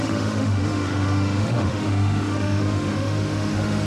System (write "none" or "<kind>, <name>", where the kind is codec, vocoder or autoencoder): autoencoder, DAC-VAE